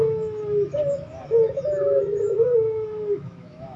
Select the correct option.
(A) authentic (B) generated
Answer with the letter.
B